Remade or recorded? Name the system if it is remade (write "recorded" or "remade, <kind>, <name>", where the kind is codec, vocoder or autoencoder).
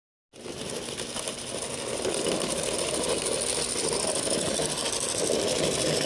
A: recorded